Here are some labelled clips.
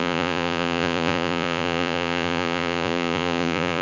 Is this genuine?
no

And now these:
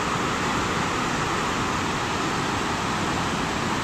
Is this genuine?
yes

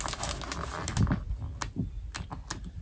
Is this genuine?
yes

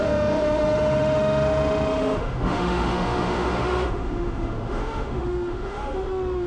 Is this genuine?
no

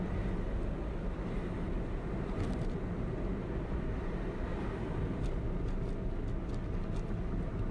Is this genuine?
yes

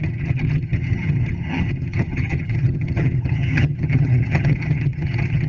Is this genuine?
no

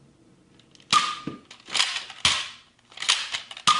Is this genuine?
yes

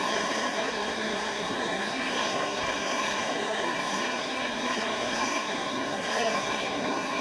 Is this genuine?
no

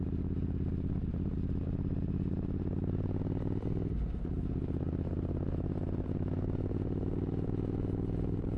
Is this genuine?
yes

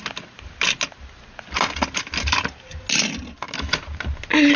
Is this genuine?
yes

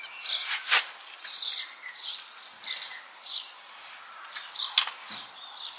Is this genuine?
yes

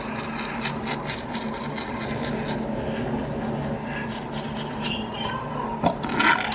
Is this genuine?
yes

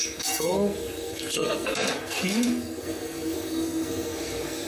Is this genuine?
no